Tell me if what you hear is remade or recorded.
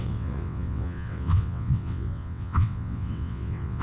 remade